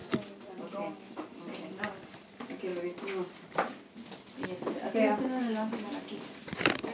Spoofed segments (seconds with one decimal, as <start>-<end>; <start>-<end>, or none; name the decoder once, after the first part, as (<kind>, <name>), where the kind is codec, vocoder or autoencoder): 0.0-0.7 (vocoder, BigVGAN v2); 1.5-2.3